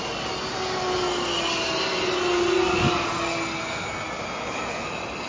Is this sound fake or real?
real